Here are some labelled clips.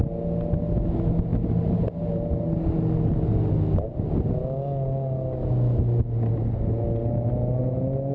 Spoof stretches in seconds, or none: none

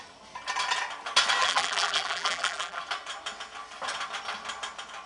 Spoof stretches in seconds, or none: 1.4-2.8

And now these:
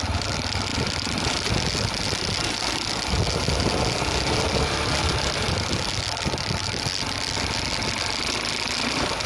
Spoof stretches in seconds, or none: none

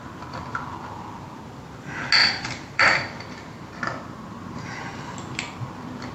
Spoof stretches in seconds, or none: 2.2-4.8

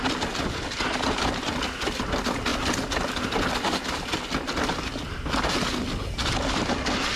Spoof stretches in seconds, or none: none